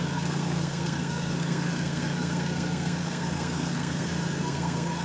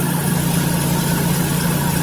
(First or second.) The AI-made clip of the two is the first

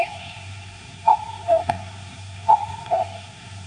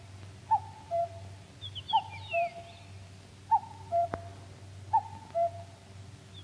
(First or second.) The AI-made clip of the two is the first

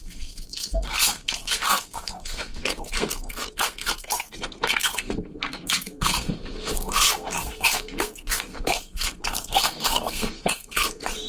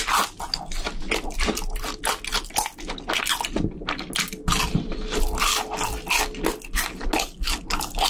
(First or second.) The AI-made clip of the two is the first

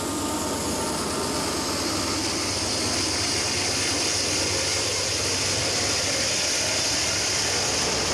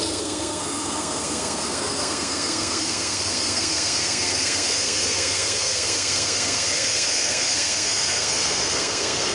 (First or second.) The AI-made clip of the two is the second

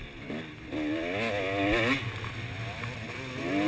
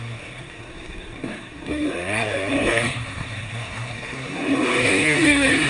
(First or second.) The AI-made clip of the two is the second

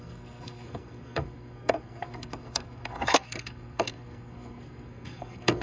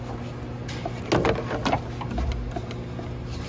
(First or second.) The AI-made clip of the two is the first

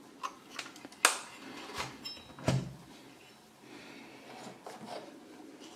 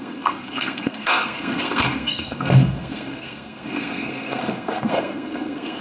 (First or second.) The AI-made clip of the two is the second